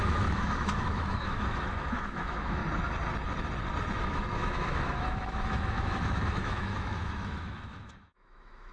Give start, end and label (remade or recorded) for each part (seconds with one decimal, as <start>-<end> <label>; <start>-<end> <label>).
0.0-2.6 remade; 2.6-4.0 recorded; 4.0-8.7 remade